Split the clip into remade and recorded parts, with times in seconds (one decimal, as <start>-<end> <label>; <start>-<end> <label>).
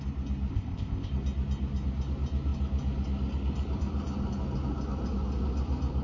0.0-0.5 recorded; 0.5-1.1 remade; 1.1-6.0 recorded